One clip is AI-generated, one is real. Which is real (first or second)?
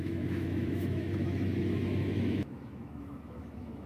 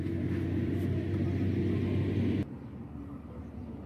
second